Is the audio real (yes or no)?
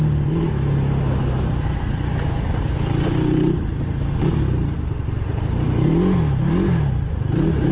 yes